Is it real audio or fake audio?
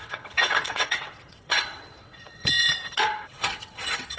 fake